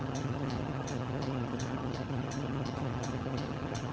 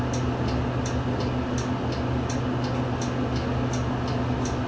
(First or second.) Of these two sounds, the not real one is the first